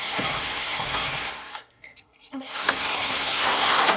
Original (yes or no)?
no